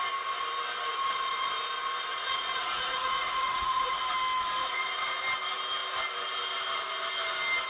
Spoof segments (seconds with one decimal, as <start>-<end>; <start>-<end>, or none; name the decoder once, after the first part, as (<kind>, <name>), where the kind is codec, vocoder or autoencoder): 2.1-4.0 (vocoder, Vocos); 4.6-5.2